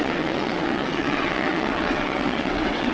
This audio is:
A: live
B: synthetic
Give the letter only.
B